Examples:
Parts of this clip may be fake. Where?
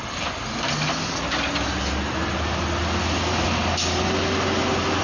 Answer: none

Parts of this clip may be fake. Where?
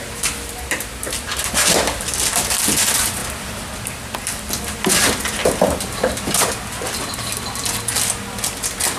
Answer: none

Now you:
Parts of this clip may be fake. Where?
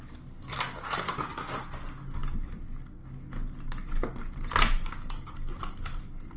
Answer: 0.5-1.1 (vocoder, BigVGAN v2)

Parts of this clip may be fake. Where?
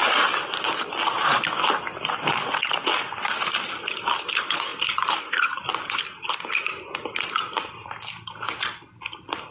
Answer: 0.0-1.0 (vocoder, BigVGAN v2); 4.7-5.6